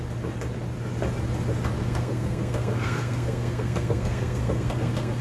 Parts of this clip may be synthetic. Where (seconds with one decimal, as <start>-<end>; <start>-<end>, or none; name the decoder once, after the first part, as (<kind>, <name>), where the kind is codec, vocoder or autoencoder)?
1.8-5.2 (codec, SNAC)